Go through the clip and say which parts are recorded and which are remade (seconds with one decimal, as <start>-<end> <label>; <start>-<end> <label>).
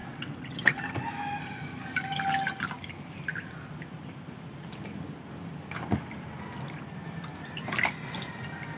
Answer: 0.0-0.9 remade; 0.9-8.8 recorded